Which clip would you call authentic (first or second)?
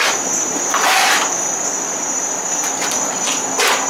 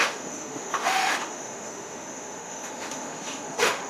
first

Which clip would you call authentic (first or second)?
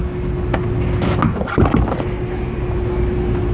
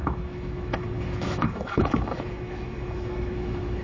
first